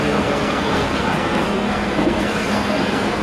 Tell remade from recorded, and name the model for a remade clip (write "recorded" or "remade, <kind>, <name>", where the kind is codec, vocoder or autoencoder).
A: remade, codec, SNAC